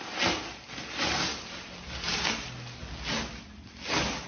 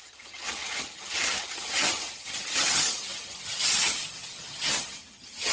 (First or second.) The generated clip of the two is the second